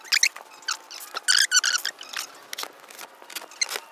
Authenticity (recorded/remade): recorded